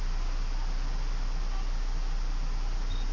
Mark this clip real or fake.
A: real